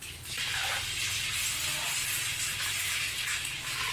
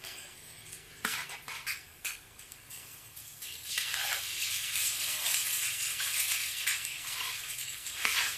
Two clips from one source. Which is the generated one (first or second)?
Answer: second